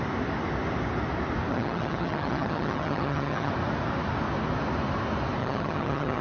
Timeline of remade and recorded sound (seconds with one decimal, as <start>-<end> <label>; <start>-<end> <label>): 0.0-1.5 recorded; 1.5-3.5 remade; 3.5-5.4 recorded; 5.4-6.2 remade